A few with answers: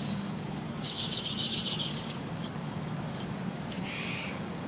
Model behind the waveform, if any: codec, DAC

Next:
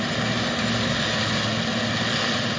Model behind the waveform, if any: none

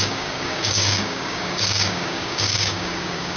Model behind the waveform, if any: codec, DAC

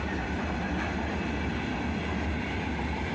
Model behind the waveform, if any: none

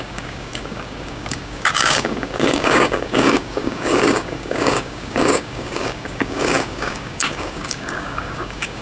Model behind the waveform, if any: codec, DAC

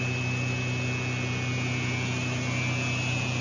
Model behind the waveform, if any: none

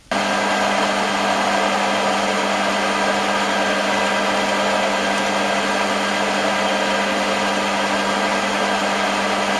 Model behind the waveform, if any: none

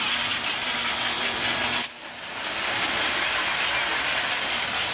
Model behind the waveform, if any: none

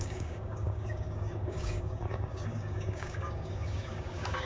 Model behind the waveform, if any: codec, DAC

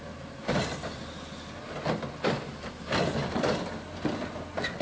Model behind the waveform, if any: none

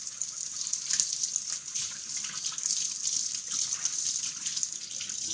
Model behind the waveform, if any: none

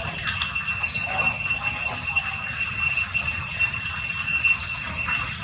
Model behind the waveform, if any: none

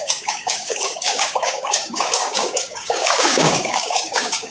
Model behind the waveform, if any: codec, DAC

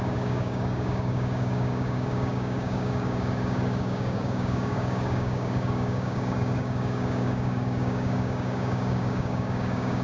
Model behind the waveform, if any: codec, DAC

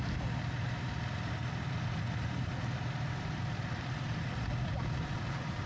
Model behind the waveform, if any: none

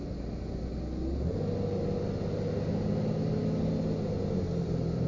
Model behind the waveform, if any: none